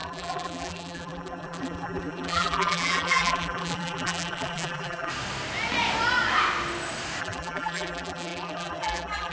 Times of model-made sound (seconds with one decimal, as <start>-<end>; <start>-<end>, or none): 0.0-5.1; 7.2-9.3